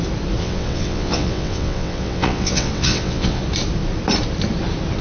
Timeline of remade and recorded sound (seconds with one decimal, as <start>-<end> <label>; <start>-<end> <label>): 0.0-0.4 recorded; 0.4-3.4 remade; 3.4-5.0 recorded